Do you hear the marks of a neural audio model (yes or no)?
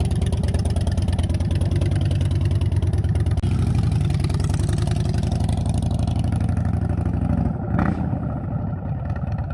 no